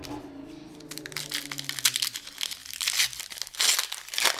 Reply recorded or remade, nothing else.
recorded